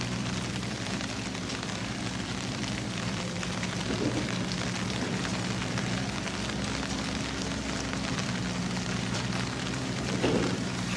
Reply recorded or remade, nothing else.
remade